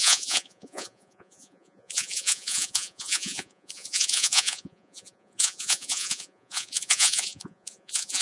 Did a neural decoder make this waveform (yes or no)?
yes